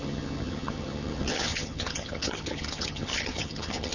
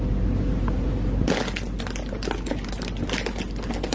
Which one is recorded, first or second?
second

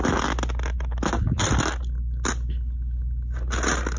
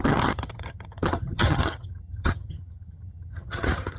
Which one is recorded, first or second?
first